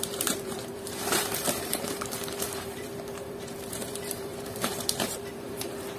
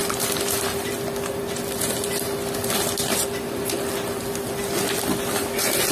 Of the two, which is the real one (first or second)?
second